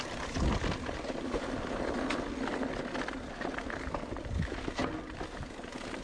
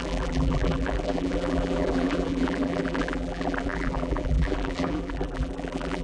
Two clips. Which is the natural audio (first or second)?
first